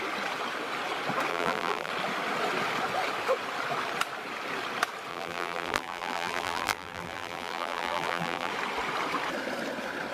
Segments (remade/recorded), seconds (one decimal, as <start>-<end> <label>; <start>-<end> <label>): 0.0-1.3 recorded; 1.3-1.9 remade; 1.9-5.1 recorded; 5.1-8.5 remade; 8.5-10.1 recorded